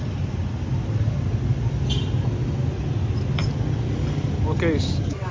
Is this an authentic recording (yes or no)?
yes